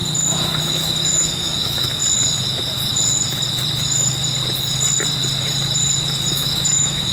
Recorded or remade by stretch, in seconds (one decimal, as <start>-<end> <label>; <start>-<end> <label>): 0.0-0.6 recorded; 0.6-2.0 remade; 2.0-6.3 recorded; 6.3-7.1 remade